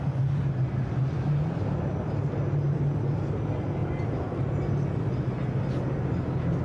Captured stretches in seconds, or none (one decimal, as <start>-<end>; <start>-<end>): 0.0-6.6